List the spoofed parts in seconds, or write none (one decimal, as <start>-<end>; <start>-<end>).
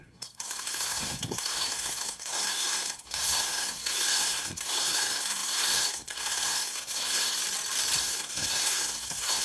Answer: 0.0-7.4; 8.0-9.4